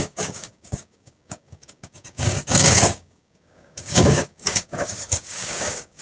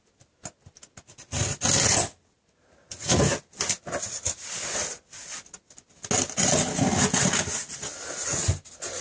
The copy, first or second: first